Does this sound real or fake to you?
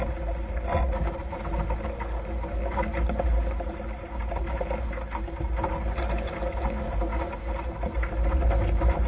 real